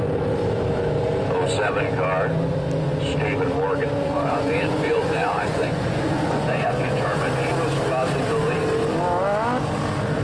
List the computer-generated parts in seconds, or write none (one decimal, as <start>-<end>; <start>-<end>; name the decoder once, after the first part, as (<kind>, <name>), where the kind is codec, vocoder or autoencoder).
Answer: 4.0-7.2 (vocoder, Vocos)